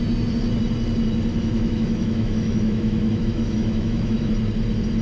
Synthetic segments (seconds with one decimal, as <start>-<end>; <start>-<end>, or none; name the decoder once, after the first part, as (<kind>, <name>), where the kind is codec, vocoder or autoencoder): 1.3-4.3 (autoencoder, DAC-VAE)